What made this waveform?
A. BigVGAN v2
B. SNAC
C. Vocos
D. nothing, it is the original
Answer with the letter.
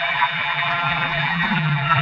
A